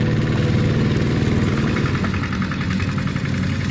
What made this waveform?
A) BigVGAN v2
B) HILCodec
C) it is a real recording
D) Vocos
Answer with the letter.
C